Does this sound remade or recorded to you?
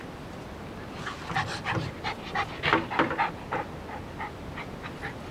recorded